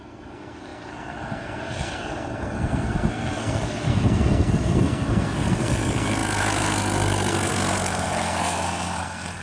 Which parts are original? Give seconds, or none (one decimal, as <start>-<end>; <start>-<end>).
none